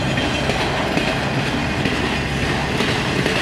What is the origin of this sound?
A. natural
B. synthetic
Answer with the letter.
A